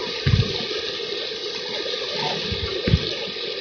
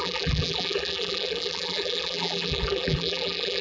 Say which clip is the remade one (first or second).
second